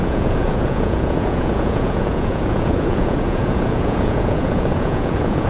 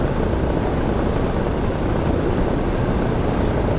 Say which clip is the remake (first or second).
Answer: first